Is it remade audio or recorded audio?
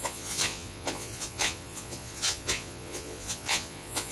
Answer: remade